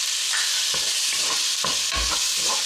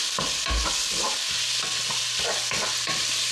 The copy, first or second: first